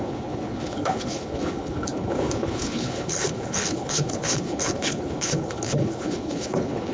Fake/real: fake